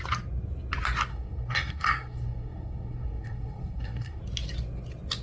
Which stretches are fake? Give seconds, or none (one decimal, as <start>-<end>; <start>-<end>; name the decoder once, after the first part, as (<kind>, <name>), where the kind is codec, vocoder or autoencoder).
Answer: 1.1-4.2 (codec, SNAC)